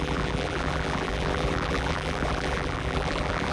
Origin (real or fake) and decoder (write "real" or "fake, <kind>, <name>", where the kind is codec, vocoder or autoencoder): fake, vocoder, BigVGAN v2